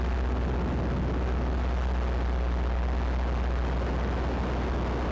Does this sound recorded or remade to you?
recorded